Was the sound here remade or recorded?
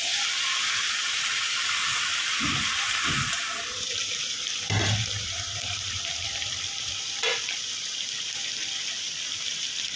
recorded